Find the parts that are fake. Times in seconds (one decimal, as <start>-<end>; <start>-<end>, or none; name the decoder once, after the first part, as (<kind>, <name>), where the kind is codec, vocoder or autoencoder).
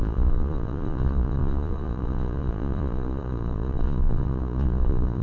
0.0-5.2 (vocoder, Vocos)